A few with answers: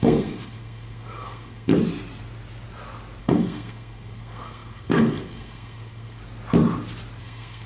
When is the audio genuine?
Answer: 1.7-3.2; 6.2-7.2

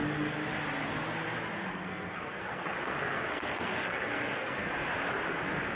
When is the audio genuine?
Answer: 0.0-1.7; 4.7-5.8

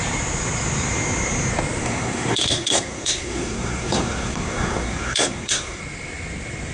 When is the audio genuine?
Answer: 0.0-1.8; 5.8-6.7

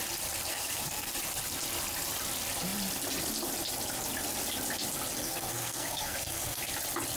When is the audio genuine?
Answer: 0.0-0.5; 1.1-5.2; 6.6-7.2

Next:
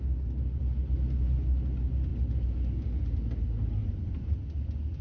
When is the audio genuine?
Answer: 0.0-5.0

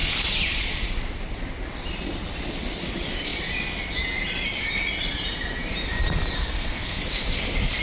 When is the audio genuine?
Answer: 0.0-6.4; 7.0-7.8

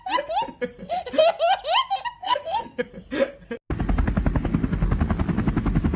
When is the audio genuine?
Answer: 0.0-2.2; 2.9-6.0